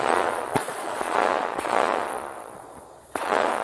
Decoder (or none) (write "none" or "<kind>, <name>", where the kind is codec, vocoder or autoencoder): vocoder, Vocos